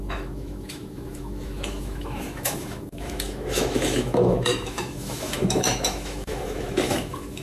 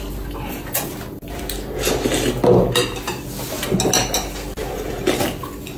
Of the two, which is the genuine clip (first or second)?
second